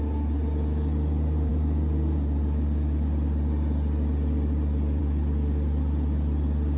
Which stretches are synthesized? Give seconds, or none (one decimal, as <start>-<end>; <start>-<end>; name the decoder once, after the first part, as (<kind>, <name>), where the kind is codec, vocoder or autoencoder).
none